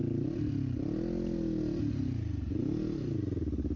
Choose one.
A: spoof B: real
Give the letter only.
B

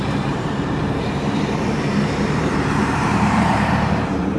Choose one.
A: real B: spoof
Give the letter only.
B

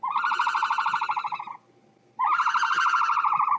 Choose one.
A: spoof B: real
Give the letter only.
B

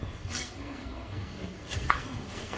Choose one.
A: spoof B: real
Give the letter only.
A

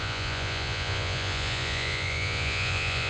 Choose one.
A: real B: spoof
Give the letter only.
B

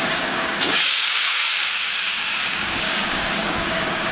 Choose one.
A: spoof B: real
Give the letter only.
A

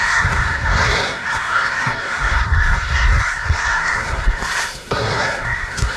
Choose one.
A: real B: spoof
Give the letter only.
B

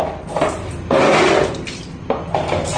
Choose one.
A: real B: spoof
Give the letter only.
A